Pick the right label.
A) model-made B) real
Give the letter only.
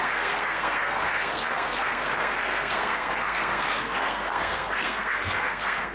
A